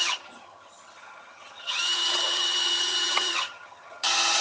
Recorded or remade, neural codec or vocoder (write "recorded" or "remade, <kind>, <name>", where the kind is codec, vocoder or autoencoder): remade, vocoder, HiFi-GAN